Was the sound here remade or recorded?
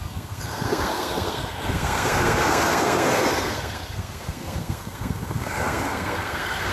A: remade